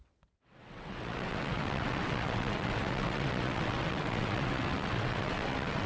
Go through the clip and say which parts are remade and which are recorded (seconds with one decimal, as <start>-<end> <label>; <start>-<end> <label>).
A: 0.0-5.9 remade